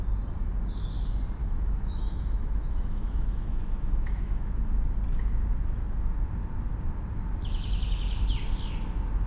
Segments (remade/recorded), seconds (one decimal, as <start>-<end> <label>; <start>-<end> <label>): 0.0-1.4 recorded; 1.4-4.5 remade; 4.5-9.3 recorded